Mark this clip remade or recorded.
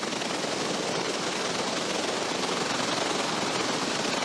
recorded